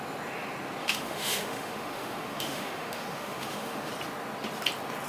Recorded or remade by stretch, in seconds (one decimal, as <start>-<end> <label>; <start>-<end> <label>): 0.0-0.8 recorded; 0.8-3.9 remade; 3.9-5.1 recorded